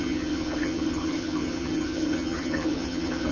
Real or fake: fake